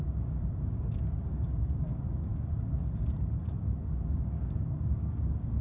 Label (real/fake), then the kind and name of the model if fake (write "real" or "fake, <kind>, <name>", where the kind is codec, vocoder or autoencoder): fake, codec, DAC